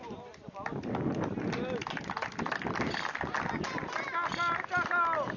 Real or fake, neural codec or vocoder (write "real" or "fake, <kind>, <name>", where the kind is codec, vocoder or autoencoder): real